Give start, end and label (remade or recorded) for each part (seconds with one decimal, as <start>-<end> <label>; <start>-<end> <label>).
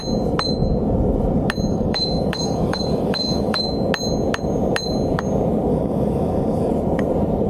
0.0-1.7 recorded; 1.7-3.6 remade; 3.6-5.7 recorded; 5.7-6.7 remade; 6.7-7.5 recorded